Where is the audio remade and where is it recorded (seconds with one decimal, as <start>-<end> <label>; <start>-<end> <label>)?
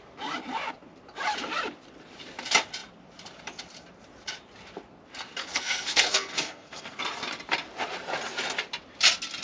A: 0.0-5.4 recorded; 5.4-7.0 remade; 7.0-9.4 recorded